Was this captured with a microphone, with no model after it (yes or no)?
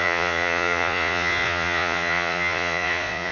no